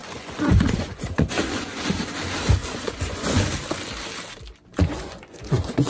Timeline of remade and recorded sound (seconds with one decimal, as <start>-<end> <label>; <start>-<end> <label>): 0.0-1.8 remade; 1.8-2.6 recorded; 2.6-3.4 remade; 3.4-4.7 recorded; 4.7-5.9 remade